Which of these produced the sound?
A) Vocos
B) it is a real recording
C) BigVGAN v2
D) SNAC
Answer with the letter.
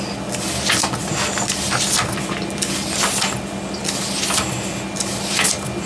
B